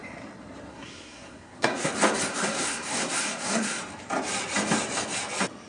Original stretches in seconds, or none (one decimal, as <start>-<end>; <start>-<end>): 0.0-0.7; 1.9-2.3; 3.8-5.7